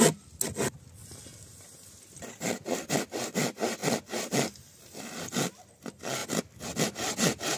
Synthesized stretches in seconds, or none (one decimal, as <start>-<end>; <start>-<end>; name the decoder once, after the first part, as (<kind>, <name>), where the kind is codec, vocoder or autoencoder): none